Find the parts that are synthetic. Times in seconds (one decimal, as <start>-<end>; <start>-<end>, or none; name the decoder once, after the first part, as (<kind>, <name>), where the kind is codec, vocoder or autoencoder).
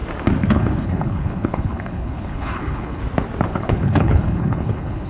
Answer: 0.5-3.0 (codec, HILCodec); 3.5-5.1